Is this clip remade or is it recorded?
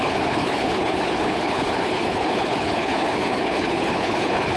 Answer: remade